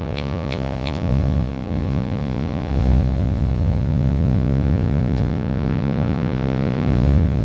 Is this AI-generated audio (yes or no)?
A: yes